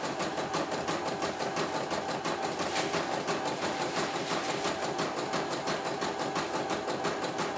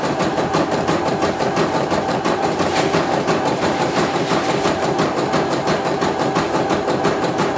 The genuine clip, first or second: first